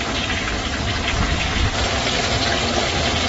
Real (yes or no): yes